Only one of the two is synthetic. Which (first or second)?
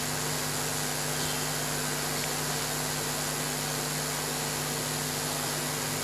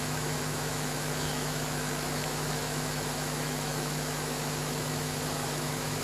second